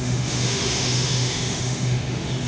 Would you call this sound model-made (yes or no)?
yes